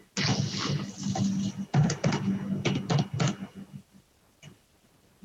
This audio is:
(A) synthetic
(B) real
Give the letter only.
B